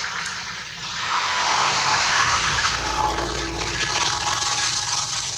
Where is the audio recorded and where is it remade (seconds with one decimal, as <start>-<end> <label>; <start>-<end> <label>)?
0.0-1.0 recorded; 1.0-3.0 remade; 3.0-5.4 recorded

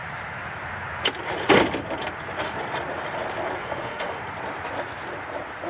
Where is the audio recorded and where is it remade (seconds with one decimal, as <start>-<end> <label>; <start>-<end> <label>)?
0.0-3.6 recorded; 3.6-4.2 remade; 4.2-5.7 recorded

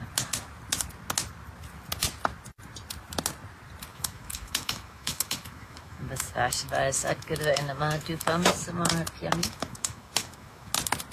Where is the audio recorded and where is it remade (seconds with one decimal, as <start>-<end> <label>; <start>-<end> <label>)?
0.0-3.9 recorded; 3.9-8.5 remade; 8.5-9.4 recorded; 9.4-10.7 remade; 10.7-11.1 recorded

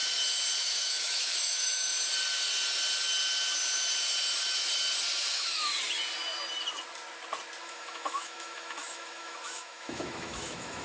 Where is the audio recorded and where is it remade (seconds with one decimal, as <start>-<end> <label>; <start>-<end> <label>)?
0.0-0.6 recorded; 0.6-1.9 remade; 1.9-5.3 recorded; 5.3-5.7 remade; 5.7-7.6 recorded; 7.6-10.8 remade

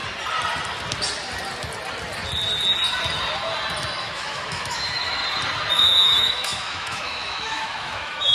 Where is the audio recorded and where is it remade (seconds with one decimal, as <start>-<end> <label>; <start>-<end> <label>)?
0.0-4.0 recorded; 4.0-5.2 remade; 5.2-5.7 recorded; 5.7-8.3 remade

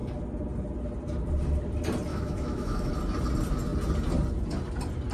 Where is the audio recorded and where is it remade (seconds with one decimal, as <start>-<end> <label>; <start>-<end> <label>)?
0.0-2.1 recorded; 2.1-2.9 remade; 2.9-5.1 recorded

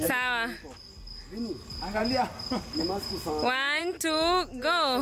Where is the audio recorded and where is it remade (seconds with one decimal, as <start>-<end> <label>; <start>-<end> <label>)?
0.0-5.0 recorded

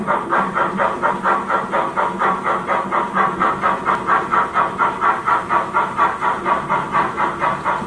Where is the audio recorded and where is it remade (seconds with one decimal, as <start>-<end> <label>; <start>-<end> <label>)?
0.0-7.9 recorded